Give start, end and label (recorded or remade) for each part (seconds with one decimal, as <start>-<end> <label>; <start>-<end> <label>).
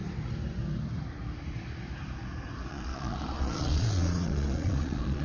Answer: 0.0-2.7 recorded; 2.7-5.2 remade